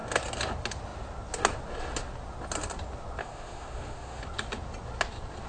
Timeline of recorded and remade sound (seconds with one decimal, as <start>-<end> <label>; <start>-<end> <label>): 0.0-3.2 recorded; 3.2-4.2 remade; 4.2-5.5 recorded